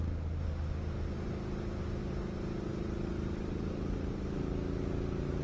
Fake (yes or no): no